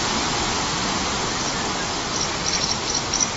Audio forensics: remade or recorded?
recorded